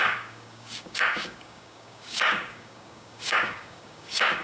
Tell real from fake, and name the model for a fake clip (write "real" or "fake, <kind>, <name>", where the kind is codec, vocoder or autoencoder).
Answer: fake, codec, DAC